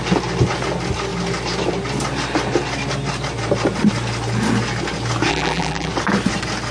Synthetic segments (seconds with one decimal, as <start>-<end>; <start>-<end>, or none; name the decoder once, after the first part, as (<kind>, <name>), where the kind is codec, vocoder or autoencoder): 5.3-5.9 (vocoder, BigVGAN v2)